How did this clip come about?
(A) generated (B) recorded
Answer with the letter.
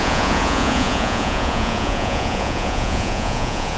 A